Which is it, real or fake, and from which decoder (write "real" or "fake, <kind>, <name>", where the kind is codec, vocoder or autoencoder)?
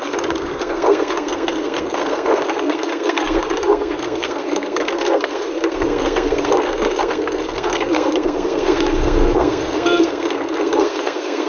fake, codec, SNAC